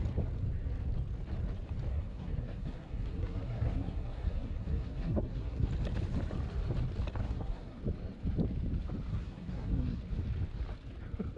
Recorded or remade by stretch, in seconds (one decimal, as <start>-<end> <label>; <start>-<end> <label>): 0.0-1.9 recorded; 1.9-5.7 remade; 5.7-7.2 recorded; 7.2-7.8 remade; 7.8-9.1 recorded; 9.1-10.0 remade; 10.0-11.4 recorded